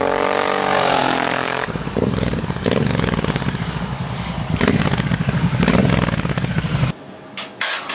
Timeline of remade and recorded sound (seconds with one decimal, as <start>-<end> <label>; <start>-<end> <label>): 0.0-6.7 remade; 6.7-7.3 recorded; 7.3-7.9 remade